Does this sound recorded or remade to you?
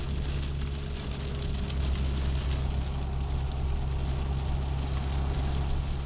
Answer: recorded